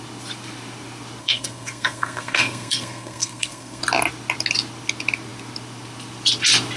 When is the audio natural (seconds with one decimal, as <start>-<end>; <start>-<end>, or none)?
0.0-1.2; 3.8-6.8